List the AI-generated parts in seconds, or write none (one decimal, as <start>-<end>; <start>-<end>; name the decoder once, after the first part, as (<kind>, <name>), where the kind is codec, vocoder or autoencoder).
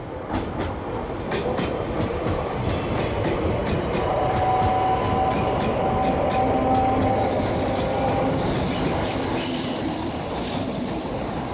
none